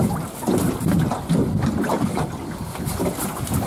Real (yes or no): yes